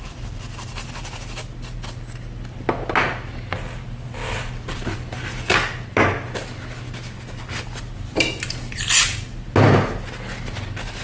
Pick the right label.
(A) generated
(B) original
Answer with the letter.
B